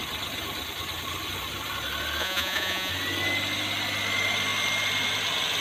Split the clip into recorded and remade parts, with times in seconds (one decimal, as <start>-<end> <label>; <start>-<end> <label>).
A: 0.0-2.2 recorded; 2.2-2.9 remade; 2.9-5.6 recorded